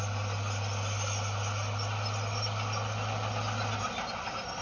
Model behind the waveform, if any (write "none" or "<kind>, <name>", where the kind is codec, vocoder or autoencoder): none